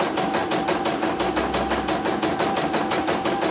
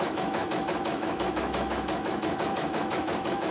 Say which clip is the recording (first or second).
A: first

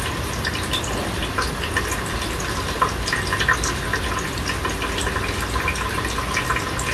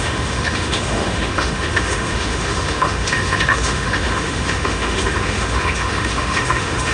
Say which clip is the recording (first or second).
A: first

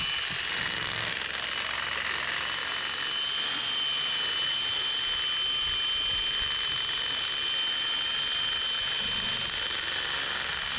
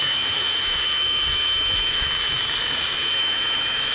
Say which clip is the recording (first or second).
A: first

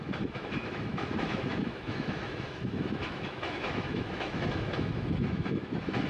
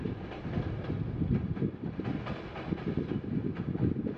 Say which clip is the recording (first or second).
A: second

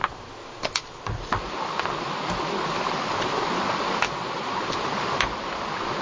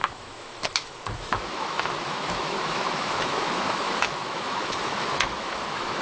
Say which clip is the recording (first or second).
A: first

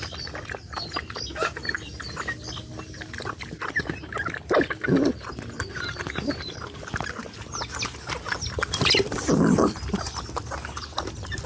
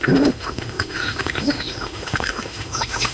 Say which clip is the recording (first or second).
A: first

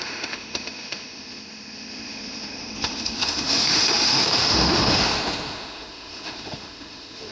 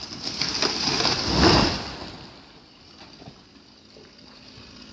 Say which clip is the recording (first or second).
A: second